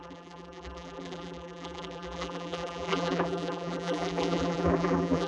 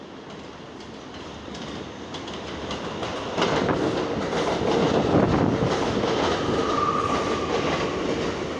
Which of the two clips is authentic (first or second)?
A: second